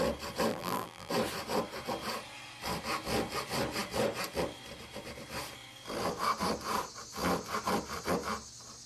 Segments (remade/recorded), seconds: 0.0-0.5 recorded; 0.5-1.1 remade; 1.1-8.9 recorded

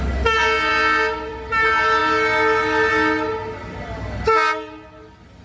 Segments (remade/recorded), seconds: 0.0-5.4 recorded

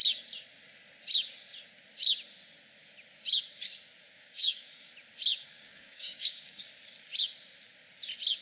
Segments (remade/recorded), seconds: 0.0-4.2 recorded; 4.2-4.9 remade; 4.9-5.4 recorded; 5.4-6.7 remade; 6.7-8.4 recorded

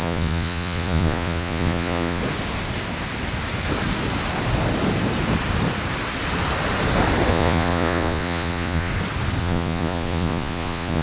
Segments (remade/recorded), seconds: 0.0-2.2 remade; 2.2-7.3 recorded; 7.3-8.9 remade; 8.9-9.4 recorded; 9.4-11.0 remade